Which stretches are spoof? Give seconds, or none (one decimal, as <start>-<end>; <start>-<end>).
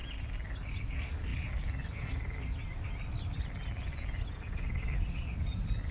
none